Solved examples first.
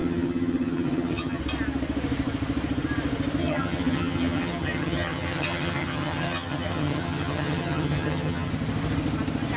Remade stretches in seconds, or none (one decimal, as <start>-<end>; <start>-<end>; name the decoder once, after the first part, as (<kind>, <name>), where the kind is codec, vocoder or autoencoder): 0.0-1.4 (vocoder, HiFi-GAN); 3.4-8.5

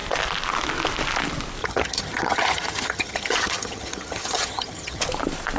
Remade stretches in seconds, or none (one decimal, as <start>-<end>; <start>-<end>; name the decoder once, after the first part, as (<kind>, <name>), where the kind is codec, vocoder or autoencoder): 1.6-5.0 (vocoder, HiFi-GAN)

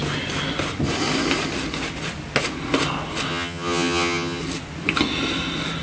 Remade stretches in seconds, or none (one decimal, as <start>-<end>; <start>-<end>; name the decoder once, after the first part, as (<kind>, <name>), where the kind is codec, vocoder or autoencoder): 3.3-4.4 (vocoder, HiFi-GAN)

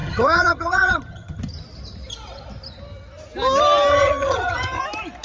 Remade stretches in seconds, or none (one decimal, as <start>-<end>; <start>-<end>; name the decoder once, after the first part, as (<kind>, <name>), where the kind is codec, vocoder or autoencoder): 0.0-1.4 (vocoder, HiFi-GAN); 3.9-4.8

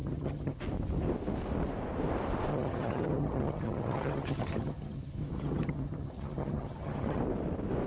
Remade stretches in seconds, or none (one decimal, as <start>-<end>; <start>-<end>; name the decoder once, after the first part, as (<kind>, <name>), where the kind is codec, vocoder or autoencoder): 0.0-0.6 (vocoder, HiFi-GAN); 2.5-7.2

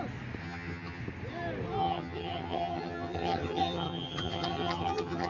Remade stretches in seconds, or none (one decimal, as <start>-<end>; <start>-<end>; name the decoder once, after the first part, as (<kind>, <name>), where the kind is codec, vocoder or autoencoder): 0.4-1.0 (vocoder, HiFi-GAN); 1.8-5.3

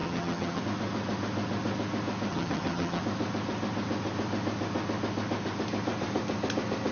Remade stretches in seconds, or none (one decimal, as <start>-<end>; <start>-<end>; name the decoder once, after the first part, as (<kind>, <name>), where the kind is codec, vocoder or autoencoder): 0.0-0.6 (vocoder, HiFi-GAN); 2.3-3.0

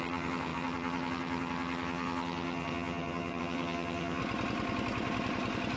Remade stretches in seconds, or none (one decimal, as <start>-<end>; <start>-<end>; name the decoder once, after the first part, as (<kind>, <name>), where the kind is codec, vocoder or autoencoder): 0.0-4.2 (vocoder, HiFi-GAN)